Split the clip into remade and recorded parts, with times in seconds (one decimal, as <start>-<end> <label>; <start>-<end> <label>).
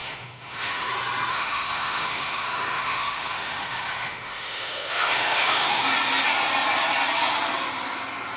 0.0-0.9 remade; 0.9-1.3 recorded; 1.3-5.8 remade; 5.8-8.4 recorded